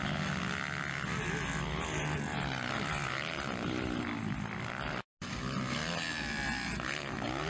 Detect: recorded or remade recorded